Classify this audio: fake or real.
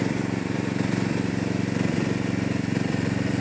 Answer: fake